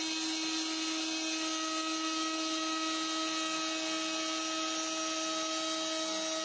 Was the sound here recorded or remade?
recorded